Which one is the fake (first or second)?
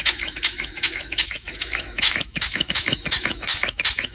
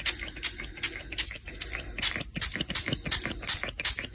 first